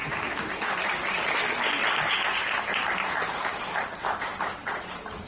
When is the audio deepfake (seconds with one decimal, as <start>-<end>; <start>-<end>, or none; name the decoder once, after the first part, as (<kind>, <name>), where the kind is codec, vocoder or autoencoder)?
0.0-1.0 (vocoder, BigVGAN v2); 3.3-5.3